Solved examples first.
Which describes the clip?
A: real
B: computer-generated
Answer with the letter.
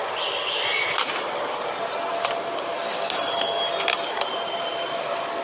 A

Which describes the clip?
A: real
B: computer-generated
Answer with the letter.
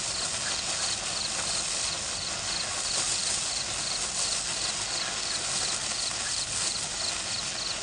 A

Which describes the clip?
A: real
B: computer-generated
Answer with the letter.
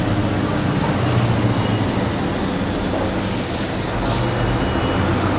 A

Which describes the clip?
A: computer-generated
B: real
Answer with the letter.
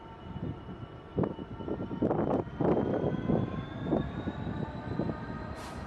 A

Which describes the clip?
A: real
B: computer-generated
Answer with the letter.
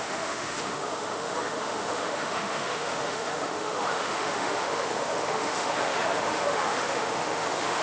B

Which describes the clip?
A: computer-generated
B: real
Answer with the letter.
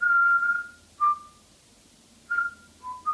B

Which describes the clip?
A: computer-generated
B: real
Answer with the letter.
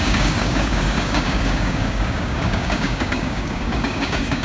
A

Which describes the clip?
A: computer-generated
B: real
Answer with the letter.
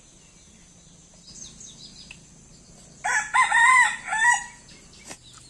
B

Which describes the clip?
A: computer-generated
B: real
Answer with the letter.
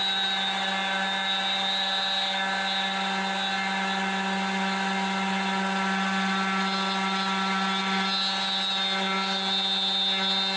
B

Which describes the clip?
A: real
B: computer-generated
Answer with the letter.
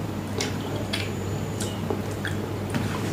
B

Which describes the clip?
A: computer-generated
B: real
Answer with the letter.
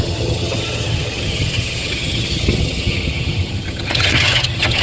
A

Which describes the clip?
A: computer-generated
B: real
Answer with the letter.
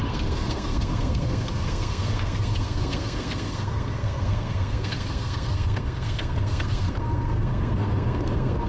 A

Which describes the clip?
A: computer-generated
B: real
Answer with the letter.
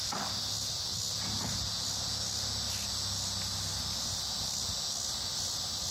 B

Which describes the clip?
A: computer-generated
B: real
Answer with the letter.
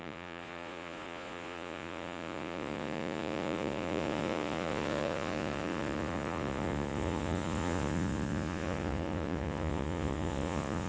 A